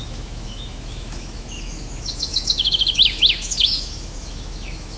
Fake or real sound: fake